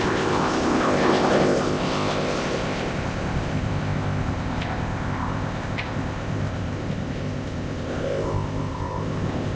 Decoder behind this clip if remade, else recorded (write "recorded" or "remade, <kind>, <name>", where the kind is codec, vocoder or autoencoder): remade, codec, ZipCodec